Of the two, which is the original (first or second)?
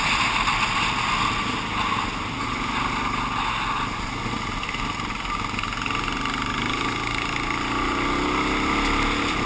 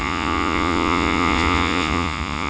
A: first